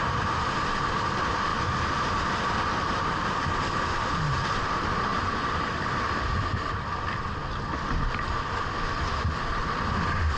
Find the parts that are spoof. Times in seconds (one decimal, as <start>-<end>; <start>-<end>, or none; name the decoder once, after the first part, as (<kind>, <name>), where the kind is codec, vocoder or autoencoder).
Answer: none